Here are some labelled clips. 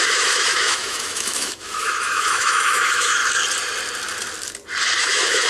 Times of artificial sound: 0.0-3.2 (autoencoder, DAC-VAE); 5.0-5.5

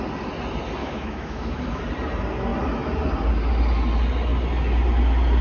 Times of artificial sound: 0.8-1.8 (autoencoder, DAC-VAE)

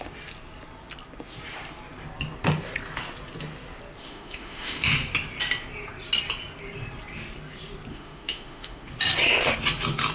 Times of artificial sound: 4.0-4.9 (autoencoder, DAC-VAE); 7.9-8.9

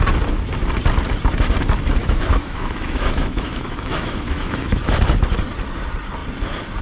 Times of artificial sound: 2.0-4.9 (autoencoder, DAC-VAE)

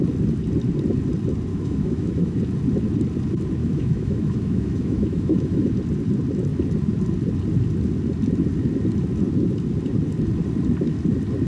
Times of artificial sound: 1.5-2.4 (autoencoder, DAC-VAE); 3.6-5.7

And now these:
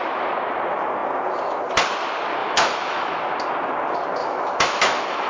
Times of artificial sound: 2.4-3.2 (autoencoder, DAC-VAE); 4.2-5.3

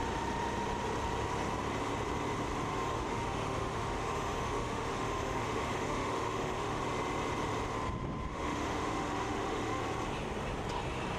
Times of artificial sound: 2.7-6.8 (autoencoder, DAC-VAE); 8.3-9.8